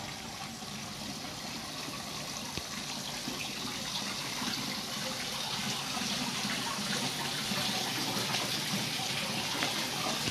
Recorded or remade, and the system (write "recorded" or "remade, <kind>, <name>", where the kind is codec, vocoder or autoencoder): recorded